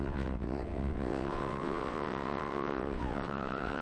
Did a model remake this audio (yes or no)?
yes